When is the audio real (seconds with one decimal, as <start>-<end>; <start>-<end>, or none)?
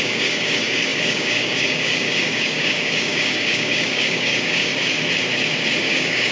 4.7-5.8